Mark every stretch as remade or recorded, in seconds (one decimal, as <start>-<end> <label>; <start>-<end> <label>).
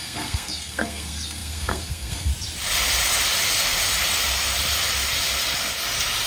0.0-2.3 remade; 2.3-6.3 recorded